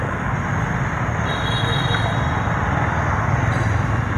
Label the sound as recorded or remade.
recorded